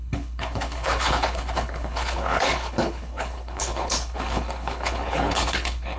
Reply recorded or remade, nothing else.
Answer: remade